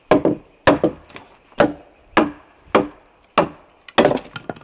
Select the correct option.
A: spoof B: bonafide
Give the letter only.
B